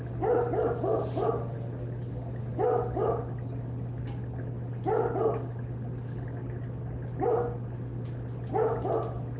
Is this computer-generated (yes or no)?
no